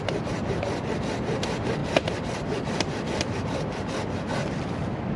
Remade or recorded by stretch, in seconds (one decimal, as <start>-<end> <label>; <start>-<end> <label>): 0.0-1.8 recorded; 1.8-5.2 remade